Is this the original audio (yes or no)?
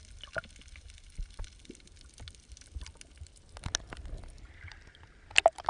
yes